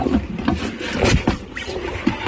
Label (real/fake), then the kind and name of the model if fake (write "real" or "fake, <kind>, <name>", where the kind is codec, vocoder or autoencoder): real